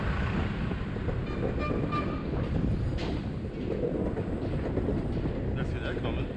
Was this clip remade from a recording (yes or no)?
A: no